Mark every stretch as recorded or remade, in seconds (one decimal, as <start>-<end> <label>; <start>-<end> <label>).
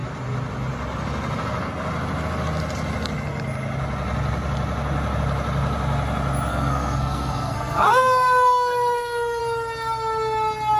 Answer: 0.0-6.5 recorded; 6.5-9.4 remade; 9.4-10.8 recorded